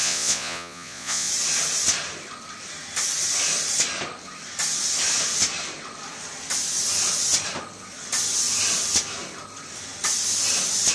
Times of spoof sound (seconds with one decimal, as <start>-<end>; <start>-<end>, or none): 0.0-1.3